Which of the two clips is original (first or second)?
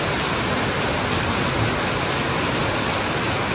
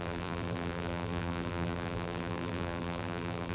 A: first